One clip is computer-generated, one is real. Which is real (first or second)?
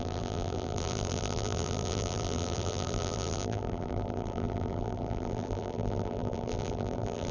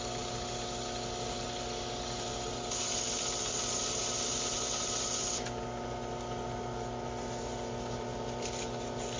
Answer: second